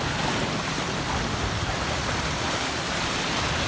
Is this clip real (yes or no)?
no